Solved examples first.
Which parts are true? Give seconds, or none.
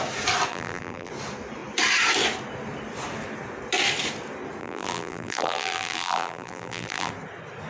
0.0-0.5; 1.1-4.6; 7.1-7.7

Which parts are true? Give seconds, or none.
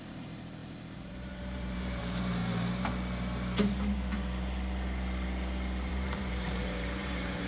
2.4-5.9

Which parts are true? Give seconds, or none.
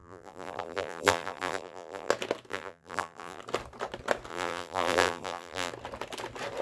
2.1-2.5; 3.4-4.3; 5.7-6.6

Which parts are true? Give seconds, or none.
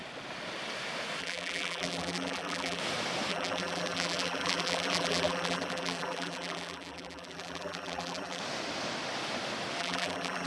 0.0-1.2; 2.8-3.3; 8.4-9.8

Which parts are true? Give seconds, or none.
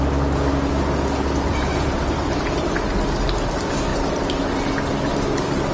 0.0-1.5; 2.4-5.7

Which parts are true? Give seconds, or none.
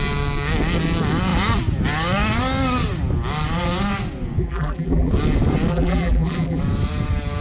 0.0-4.4; 5.1-5.7; 6.6-7.4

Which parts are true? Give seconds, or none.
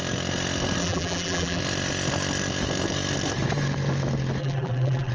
0.0-0.8; 1.6-4.4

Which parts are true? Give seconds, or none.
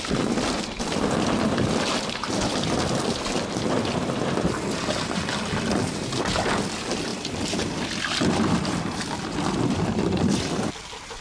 0.0-7.1; 10.6-11.2